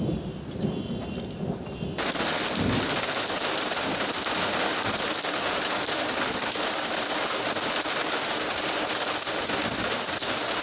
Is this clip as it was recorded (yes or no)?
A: yes